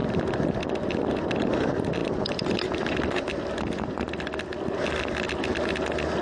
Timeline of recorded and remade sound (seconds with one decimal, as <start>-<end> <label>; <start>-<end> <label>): 0.0-6.2 recorded